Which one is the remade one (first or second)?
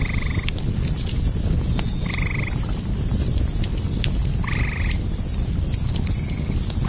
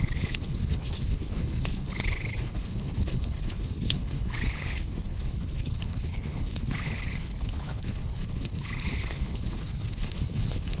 second